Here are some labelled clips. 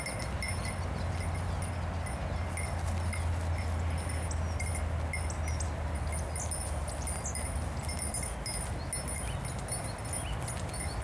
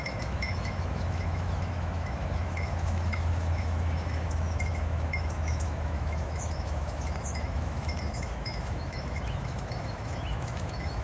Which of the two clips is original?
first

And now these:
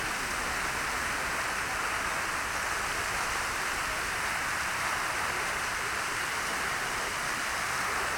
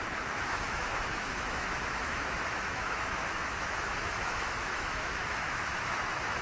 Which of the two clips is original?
first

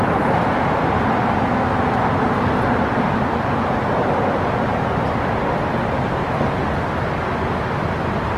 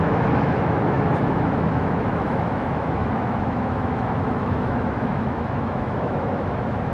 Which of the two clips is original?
first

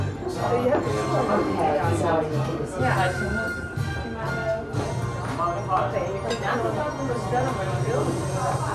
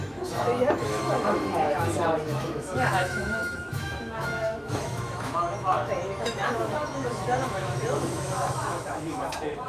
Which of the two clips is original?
first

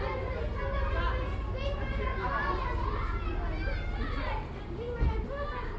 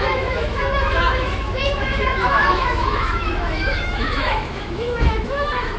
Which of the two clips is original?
first